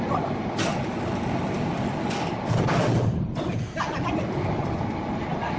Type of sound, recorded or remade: recorded